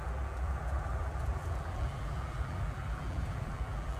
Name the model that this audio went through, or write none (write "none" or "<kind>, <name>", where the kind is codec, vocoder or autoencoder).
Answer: vocoder, BigVGAN v2